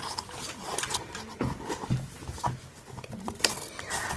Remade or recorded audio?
recorded